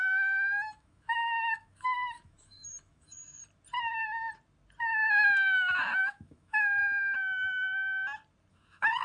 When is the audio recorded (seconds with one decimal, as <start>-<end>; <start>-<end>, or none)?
3.4-6.0; 6.8-8.5